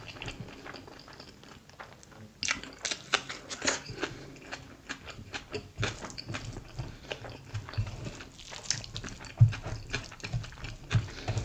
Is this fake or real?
real